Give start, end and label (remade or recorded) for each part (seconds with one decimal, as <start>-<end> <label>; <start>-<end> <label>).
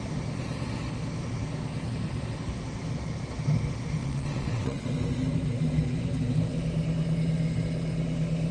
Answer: 0.0-4.0 recorded; 4.0-4.9 remade; 4.9-8.5 recorded